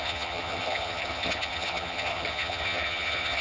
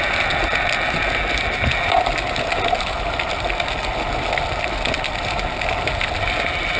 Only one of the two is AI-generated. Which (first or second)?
first